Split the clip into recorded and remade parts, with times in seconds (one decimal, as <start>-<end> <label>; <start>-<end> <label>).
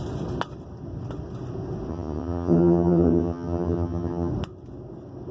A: 0.0-1.9 recorded; 1.9-4.3 remade; 4.3-5.3 recorded